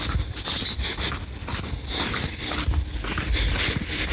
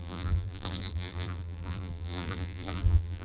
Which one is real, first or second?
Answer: first